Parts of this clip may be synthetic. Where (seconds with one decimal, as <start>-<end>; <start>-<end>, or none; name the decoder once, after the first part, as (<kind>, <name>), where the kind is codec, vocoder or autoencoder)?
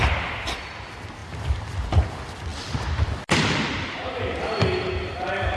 none